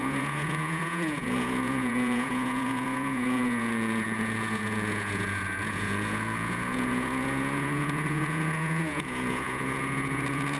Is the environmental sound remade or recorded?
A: remade